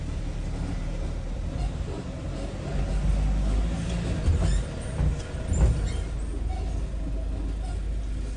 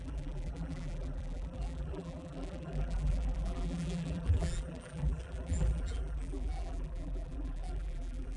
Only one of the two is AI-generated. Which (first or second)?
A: second